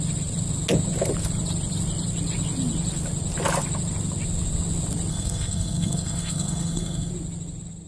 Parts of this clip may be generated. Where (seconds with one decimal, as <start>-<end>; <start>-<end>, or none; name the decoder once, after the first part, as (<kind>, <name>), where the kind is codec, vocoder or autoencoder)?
5.1-7.1 (codec, SNAC)